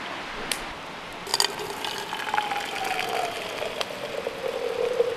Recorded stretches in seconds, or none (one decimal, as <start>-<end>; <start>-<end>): 0.0-5.2